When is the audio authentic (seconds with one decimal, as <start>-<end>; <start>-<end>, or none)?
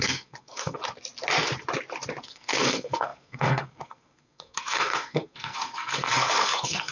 0.8-2.2